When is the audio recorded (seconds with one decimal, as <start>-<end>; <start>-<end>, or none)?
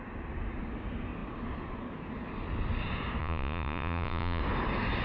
0.0-3.2; 4.4-5.0